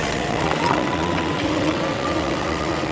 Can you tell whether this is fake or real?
fake